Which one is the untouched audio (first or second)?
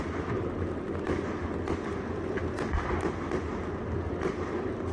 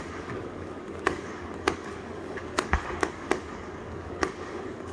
first